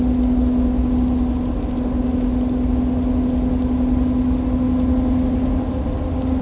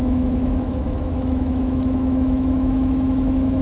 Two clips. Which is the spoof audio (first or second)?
second